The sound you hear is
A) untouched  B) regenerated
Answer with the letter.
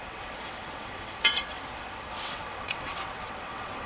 B